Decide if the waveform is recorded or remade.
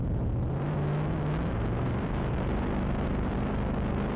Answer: remade